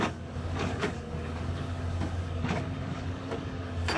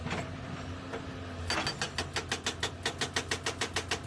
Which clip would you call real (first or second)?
second